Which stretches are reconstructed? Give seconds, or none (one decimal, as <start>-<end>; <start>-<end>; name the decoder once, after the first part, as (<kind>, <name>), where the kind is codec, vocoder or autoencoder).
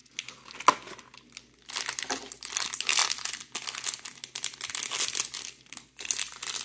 none